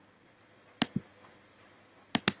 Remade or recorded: recorded